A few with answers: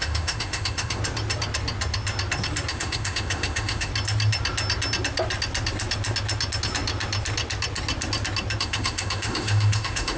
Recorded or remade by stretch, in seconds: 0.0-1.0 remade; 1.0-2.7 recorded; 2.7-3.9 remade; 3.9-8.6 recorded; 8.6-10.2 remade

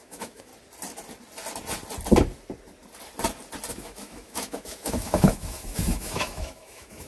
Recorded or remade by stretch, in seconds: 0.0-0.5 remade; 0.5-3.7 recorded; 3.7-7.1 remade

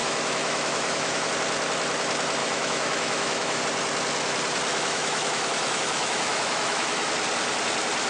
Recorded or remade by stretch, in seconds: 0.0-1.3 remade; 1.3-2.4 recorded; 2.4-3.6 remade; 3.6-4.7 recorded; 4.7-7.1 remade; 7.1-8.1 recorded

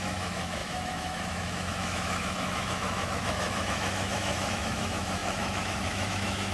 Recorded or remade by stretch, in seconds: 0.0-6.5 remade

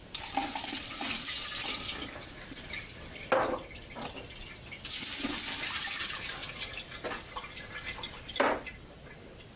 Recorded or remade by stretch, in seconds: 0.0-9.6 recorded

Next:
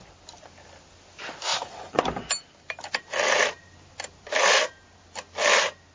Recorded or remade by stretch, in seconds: 0.0-5.9 recorded

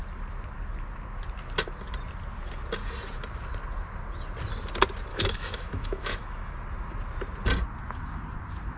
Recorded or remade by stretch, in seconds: 0.0-5.1 recorded; 5.1-6.5 remade; 6.5-8.8 recorded